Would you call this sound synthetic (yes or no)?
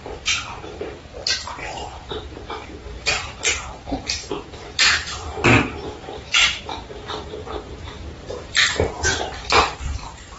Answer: yes